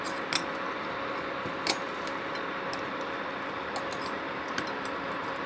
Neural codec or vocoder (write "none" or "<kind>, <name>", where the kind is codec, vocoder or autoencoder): none